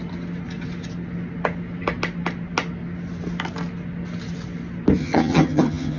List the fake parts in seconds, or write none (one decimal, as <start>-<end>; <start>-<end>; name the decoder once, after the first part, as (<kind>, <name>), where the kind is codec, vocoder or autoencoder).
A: 5.0-6.0 (vocoder, HiFi-GAN)